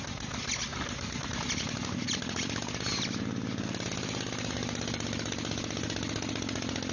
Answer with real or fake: real